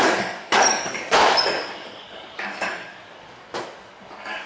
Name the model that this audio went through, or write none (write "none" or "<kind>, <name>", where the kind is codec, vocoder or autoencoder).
codec, DAC